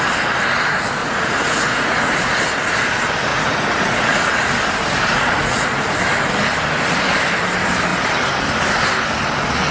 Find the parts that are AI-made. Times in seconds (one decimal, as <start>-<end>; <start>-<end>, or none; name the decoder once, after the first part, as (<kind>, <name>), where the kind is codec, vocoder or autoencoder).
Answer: 1.0-2.4 (vocoder, Vocos); 3.3-4.5; 5.1-5.7